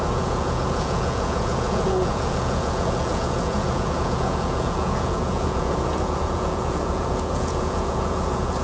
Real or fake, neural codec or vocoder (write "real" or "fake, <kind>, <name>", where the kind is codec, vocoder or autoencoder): fake, vocoder, Vocos